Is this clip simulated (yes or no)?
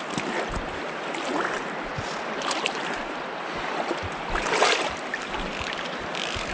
no